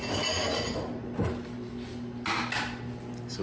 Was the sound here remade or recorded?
recorded